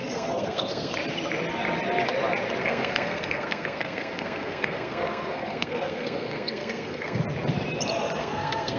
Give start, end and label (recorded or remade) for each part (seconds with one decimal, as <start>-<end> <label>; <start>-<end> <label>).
0.0-0.9 remade; 0.9-2.6 recorded; 2.6-7.2 remade; 7.2-8.2 recorded; 8.2-8.8 remade